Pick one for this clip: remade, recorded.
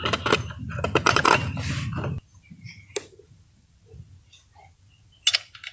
recorded